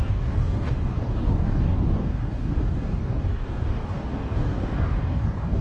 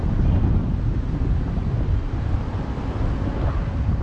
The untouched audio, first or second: second